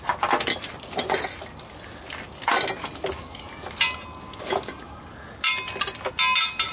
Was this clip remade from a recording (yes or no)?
no